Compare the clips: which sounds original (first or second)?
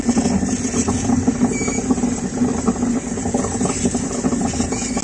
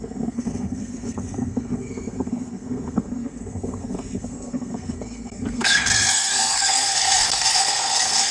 first